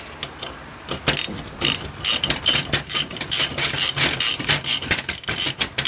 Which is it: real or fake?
real